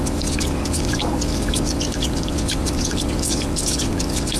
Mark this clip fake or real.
fake